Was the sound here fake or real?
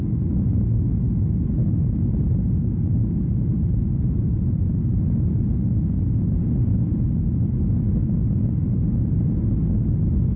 real